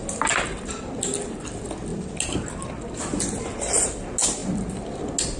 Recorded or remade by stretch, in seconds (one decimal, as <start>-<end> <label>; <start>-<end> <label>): 0.0-5.4 recorded